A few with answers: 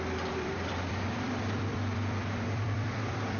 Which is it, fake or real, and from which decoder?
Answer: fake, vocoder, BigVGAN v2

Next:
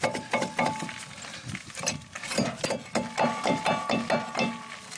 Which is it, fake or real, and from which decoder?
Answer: real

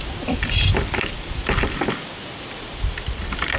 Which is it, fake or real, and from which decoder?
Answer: real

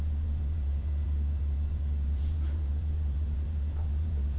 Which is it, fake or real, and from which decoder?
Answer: fake, vocoder, BigVGAN v2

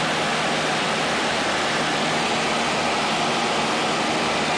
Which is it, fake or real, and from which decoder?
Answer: real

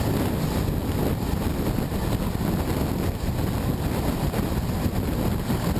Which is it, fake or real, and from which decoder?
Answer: real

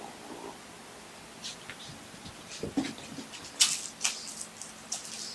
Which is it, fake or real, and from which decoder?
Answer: real